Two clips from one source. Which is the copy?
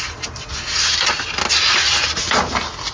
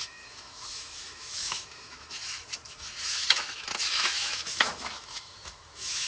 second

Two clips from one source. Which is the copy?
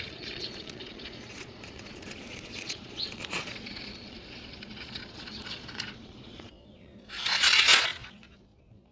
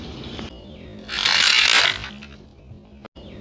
first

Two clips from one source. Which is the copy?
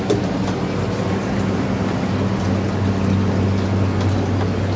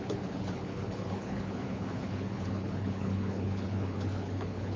second